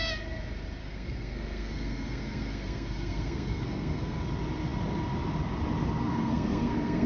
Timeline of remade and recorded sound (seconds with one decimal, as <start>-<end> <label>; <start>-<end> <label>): 0.0-0.8 recorded; 0.8-4.2 remade; 4.2-6.1 recorded; 6.1-7.1 remade